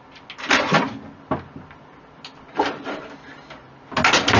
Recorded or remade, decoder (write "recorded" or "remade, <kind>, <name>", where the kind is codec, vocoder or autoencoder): recorded